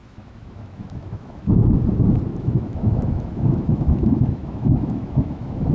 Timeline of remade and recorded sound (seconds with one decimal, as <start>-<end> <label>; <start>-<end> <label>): 0.0-1.8 remade; 1.8-2.3 recorded; 2.3-5.7 remade